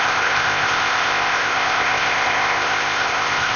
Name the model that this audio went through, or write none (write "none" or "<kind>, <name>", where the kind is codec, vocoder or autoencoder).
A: codec, ZipCodec